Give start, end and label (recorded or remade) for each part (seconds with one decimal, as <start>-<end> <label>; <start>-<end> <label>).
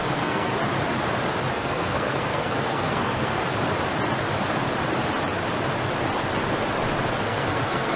0.0-0.5 remade; 0.5-1.5 recorded; 1.5-3.4 remade; 3.4-7.2 recorded; 7.2-8.0 remade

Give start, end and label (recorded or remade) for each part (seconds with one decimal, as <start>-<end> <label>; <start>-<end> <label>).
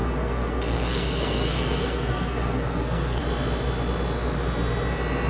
0.0-3.2 remade; 3.2-5.3 recorded